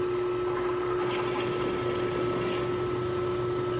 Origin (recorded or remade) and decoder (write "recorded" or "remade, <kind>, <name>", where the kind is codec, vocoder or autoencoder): recorded